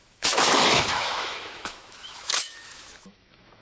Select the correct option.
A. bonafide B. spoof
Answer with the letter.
B